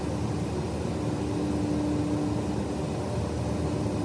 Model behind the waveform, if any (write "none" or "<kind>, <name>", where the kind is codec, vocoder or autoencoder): none